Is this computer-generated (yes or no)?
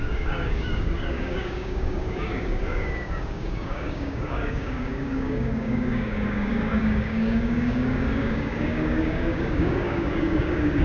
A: yes